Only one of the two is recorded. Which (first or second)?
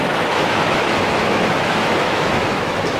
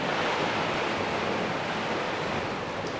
second